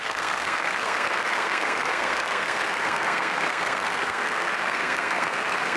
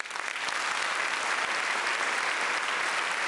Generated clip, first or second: first